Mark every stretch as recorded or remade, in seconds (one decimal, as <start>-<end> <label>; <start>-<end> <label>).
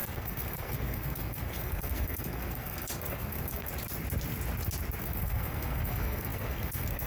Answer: 0.0-3.7 remade; 3.7-5.0 recorded; 5.0-7.1 remade